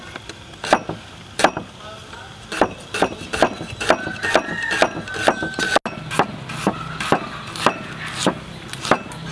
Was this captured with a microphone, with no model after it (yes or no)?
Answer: yes